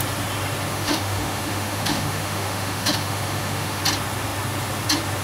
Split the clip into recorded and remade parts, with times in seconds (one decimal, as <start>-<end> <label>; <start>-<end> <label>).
0.0-0.7 recorded; 0.7-3.8 remade; 3.8-5.2 recorded